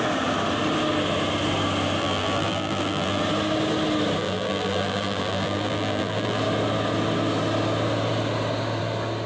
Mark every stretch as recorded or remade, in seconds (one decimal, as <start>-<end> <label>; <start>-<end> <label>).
0.0-2.0 recorded; 2.0-3.2 remade; 3.2-4.2 recorded; 4.2-6.4 remade; 6.4-9.3 recorded